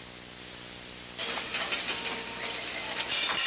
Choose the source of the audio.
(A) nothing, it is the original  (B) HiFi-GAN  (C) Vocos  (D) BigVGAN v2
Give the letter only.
A